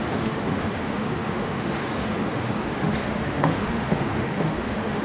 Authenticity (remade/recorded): remade